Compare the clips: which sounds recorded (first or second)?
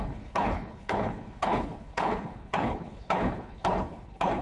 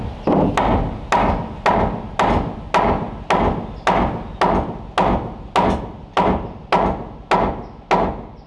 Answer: second